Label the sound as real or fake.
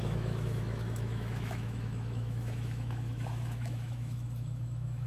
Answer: fake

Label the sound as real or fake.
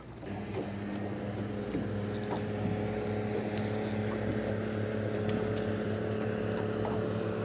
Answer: real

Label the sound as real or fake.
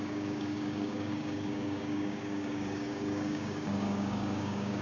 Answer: fake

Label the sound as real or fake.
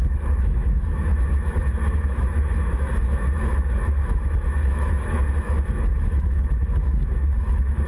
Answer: fake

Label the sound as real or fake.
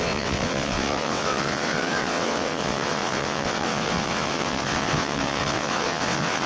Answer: fake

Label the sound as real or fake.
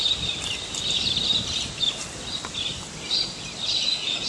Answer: real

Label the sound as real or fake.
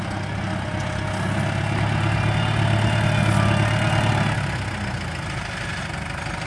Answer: real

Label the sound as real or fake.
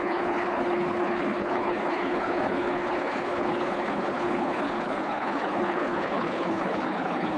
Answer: fake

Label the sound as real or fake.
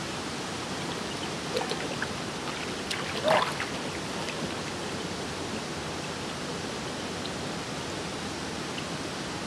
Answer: real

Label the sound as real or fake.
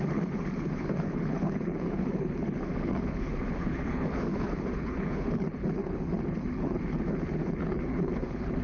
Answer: fake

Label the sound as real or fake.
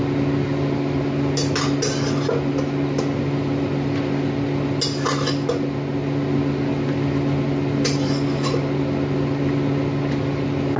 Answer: real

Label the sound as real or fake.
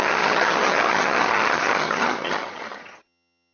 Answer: fake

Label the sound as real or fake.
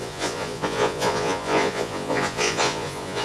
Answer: fake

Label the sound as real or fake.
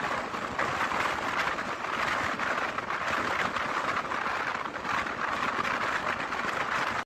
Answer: real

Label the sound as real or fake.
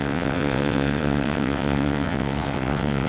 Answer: fake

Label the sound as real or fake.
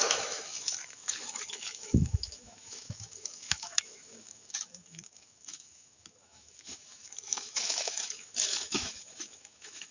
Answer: fake